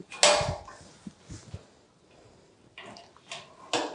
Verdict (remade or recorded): recorded